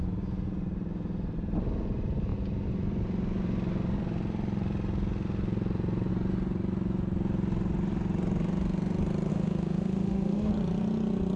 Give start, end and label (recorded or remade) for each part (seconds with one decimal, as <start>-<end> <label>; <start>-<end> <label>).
0.0-9.3 recorded; 9.3-10.5 remade; 10.5-11.4 recorded